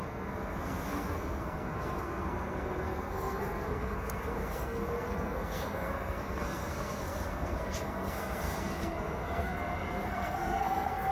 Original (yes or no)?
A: no